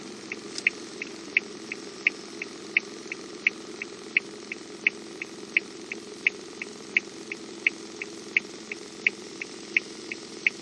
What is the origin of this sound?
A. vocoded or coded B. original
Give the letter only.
B